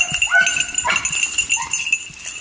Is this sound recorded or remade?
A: recorded